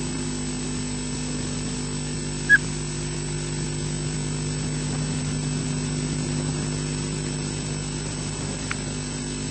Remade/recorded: recorded